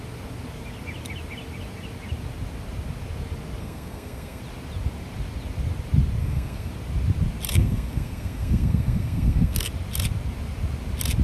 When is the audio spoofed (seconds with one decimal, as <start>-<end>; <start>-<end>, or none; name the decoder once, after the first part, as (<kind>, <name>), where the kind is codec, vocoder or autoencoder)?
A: 3.6-4.4 (codec, SNAC); 6.2-6.7; 7.5-9.7